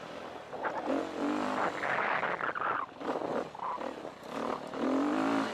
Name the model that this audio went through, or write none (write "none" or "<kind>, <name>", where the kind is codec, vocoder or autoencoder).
none